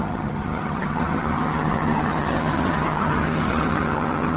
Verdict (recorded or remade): remade